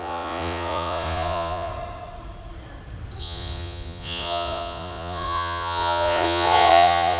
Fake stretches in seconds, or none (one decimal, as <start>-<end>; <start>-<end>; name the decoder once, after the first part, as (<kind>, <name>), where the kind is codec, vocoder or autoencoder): 0.0-1.7 (vocoder, Vocos); 3.2-7.2